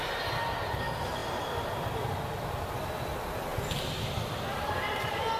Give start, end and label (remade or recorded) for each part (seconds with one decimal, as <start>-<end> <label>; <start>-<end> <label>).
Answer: 0.0-5.4 recorded